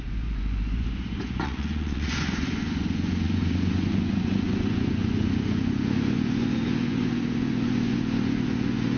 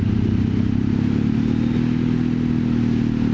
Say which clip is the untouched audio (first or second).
second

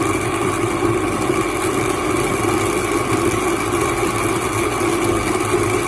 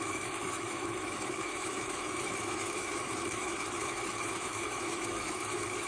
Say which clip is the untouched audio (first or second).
first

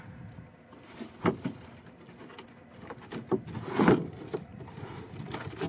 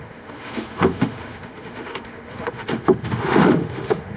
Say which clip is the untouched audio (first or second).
first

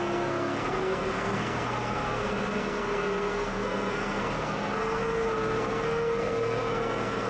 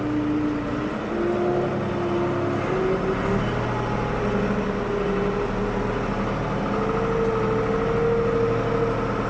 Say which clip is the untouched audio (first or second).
second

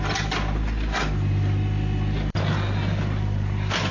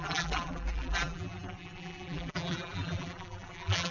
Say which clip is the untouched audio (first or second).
first